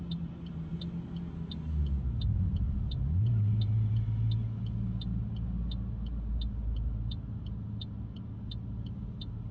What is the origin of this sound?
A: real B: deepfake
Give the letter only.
A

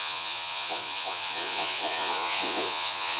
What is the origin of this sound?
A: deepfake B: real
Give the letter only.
A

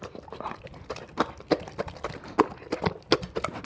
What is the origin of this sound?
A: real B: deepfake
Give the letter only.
A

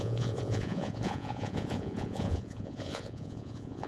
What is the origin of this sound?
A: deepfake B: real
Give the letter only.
A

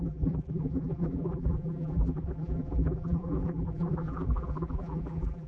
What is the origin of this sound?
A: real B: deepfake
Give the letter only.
B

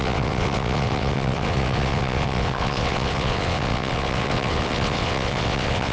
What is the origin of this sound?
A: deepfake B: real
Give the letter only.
A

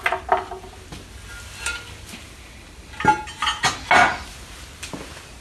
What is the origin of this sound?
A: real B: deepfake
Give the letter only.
A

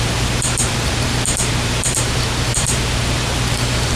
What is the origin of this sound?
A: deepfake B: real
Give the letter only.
A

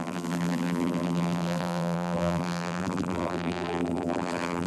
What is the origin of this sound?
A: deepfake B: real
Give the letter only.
A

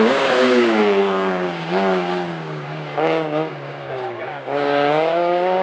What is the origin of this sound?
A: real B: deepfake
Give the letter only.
B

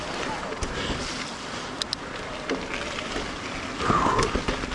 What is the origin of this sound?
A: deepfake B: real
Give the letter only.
B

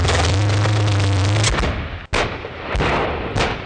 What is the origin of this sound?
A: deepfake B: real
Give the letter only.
B